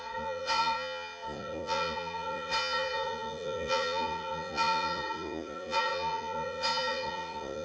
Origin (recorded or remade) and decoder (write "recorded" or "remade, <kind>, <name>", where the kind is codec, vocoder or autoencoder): remade, vocoder, Vocos